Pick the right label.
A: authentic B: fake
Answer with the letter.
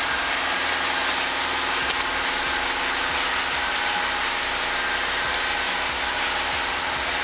A